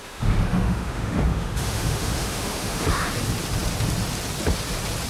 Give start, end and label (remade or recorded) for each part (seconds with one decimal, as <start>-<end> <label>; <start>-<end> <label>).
0.0-3.1 remade; 3.1-5.1 recorded